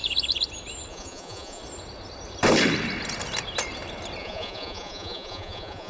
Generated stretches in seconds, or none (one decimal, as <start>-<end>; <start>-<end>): 0.9-1.6; 4.2-5.9